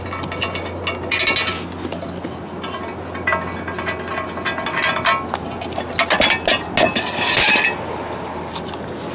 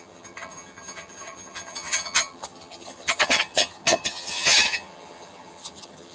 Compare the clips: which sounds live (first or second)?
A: first